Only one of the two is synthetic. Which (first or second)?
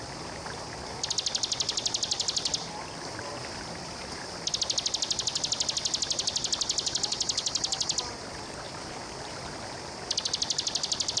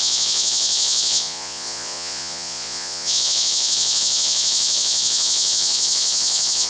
second